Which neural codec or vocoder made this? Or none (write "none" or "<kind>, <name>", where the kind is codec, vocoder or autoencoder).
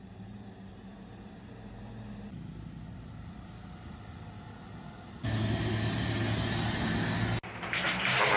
none